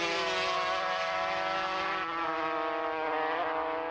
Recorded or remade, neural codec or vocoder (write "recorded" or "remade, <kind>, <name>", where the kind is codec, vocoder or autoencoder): recorded